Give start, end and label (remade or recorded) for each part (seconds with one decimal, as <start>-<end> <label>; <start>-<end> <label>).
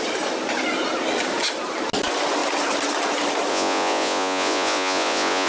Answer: 0.0-3.5 recorded; 3.5-5.5 remade